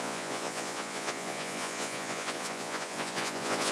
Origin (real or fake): fake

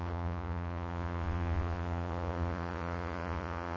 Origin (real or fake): fake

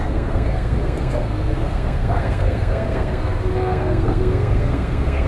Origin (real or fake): fake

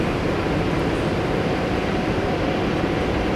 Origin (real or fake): fake